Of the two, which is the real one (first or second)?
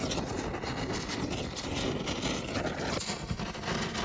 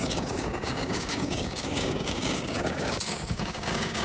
first